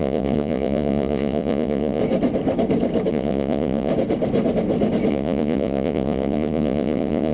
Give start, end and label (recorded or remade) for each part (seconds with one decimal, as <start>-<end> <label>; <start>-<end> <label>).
0.0-2.0 remade; 2.0-3.1 recorded; 3.1-3.9 remade; 3.9-5.1 recorded; 5.1-7.3 remade